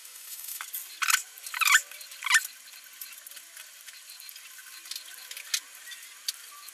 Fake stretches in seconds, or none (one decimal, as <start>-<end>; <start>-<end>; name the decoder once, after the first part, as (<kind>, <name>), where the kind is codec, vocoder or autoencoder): 0.0-0.6 (autoencoder, DAC-VAE)